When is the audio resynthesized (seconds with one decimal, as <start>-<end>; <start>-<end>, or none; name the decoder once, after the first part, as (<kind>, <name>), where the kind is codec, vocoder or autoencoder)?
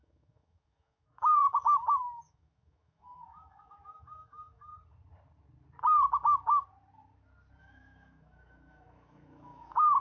0.0-4.7 (autoencoder, DAC-VAE); 7.6-10.0